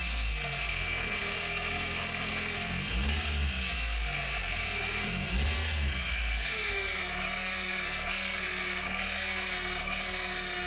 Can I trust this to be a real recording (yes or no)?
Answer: no